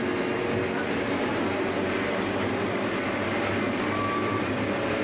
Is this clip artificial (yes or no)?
no